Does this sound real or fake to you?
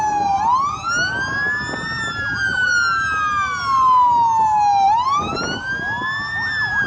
real